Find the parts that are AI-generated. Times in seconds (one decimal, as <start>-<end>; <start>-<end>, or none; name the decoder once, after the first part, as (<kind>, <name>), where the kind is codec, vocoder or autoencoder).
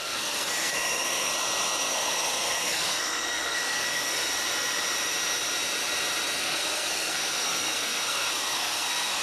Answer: 0.0-1.3 (codec, SNAC); 1.9-4.3; 6.4-9.2